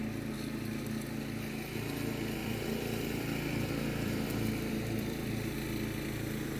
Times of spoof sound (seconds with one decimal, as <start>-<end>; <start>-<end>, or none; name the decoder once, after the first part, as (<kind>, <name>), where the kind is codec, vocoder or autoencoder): 2.4-5.3 (vocoder, BigVGAN v2)

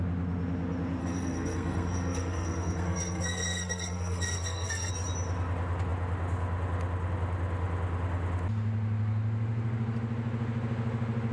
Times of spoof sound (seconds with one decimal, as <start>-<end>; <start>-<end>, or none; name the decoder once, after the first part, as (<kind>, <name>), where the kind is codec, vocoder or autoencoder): 1.0-4.9 (codec, SNAC)

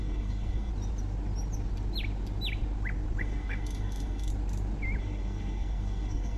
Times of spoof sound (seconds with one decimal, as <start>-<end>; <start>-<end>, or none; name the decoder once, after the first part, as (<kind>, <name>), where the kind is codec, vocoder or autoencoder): 0.0-0.7 (codec, SNAC); 3.2-4.3; 5.0-6.4

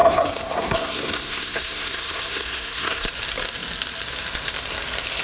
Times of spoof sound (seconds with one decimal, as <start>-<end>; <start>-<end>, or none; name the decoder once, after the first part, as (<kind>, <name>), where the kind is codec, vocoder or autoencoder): 0.0-3.1 (codec, SNAC)

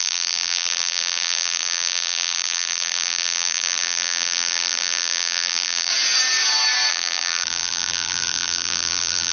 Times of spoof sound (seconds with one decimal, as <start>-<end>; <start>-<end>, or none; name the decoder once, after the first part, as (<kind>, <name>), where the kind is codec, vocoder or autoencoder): 0.0-5.9 (vocoder, BigVGAN v2); 6.9-9.3

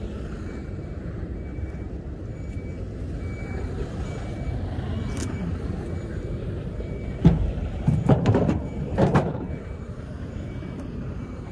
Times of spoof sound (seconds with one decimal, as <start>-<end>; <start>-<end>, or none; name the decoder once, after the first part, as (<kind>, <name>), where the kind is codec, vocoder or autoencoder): 0.0-2.3 (vocoder, BigVGAN v2); 6.4-11.5

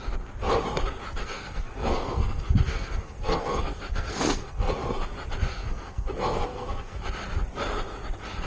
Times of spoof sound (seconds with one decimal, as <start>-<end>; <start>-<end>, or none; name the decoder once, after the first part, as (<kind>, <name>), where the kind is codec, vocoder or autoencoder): 1.2-4.7 (codec, SNAC); 5.5-7.0

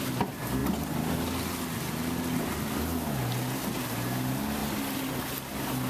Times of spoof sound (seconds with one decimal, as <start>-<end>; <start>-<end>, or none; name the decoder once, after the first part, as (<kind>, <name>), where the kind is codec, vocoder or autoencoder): none